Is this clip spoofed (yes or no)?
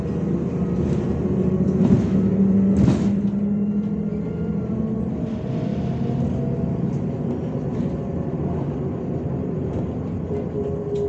no